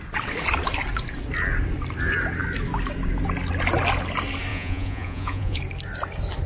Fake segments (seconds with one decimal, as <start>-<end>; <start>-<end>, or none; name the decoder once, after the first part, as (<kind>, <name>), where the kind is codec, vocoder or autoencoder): 4.5-5.6 (vocoder, Vocos)